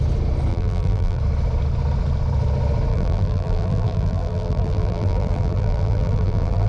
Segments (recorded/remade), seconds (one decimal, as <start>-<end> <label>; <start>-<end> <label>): 0.0-0.5 recorded; 0.5-1.2 remade; 1.2-2.9 recorded; 2.9-6.7 remade